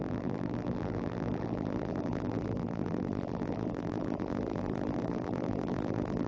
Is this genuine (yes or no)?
no